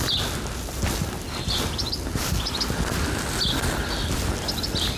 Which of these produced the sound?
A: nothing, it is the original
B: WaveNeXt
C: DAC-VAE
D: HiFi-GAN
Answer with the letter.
A